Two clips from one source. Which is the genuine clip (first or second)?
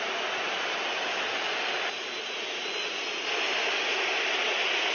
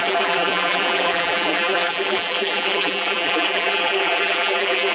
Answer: first